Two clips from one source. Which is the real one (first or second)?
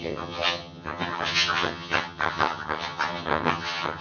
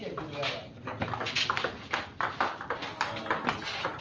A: second